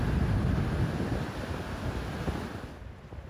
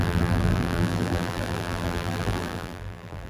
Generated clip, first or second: second